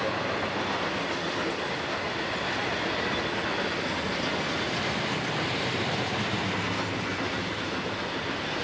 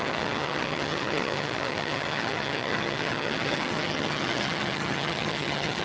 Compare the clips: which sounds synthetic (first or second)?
second